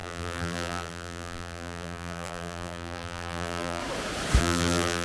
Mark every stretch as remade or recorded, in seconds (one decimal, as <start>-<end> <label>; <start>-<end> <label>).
0.0-3.8 remade; 3.8-4.4 recorded; 4.4-5.0 remade